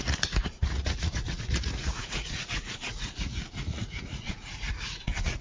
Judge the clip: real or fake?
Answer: fake